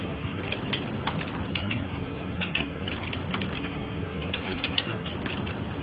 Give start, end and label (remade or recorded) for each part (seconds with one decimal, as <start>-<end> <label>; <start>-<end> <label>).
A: 0.0-0.4 remade; 0.4-1.5 recorded; 1.5-2.9 remade; 2.9-3.6 recorded; 3.6-5.1 remade; 5.1-5.8 recorded